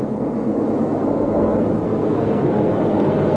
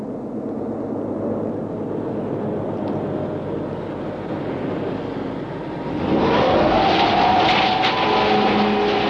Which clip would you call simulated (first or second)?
first